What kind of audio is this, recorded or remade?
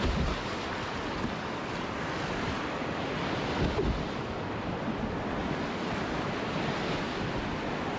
recorded